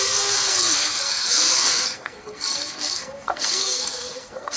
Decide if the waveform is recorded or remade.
remade